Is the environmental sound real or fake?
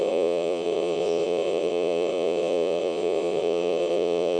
fake